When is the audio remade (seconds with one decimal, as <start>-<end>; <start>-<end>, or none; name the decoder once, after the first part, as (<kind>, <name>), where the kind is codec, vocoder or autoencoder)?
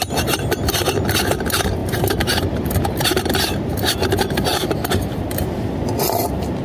1.8-3.2 (vocoder, BigVGAN v2); 4.5-5.2